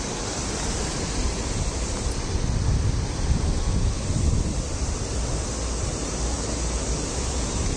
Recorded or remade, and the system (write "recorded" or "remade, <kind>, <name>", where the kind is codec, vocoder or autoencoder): recorded